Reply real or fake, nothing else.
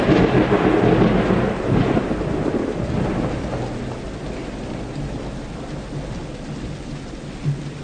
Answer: real